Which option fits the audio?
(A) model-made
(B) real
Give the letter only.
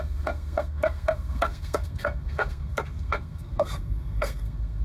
A